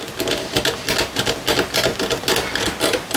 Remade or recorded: recorded